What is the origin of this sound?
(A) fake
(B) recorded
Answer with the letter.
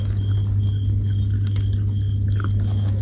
B